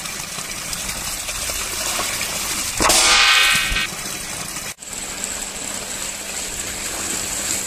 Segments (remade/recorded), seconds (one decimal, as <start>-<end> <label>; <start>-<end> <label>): 0.0-7.7 recorded